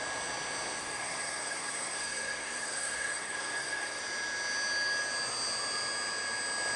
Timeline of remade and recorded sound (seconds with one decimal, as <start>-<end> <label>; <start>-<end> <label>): 0.0-0.8 recorded; 0.8-4.0 remade; 4.0-6.8 recorded